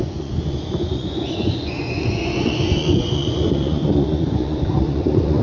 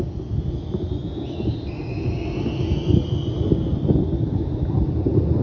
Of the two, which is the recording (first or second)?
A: second